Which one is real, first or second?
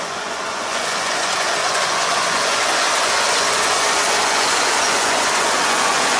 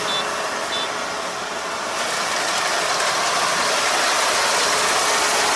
second